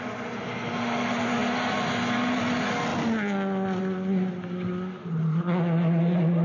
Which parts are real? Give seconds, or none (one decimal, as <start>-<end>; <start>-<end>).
0.0-6.4